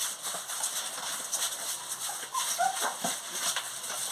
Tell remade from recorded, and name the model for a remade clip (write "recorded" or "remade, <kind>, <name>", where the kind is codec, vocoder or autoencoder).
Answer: recorded